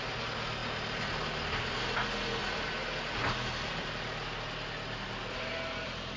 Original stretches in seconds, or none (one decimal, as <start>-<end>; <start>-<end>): 0.0-6.2